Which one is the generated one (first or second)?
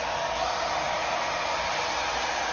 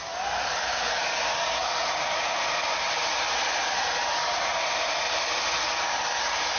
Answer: second